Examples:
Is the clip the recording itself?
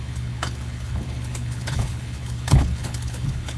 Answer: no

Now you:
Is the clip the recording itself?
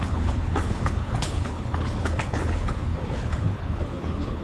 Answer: no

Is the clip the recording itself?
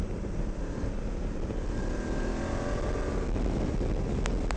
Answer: yes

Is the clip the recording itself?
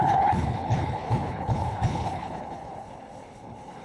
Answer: no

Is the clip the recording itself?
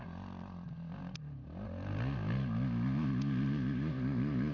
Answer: yes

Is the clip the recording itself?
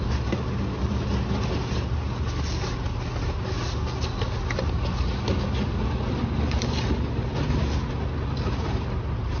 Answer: yes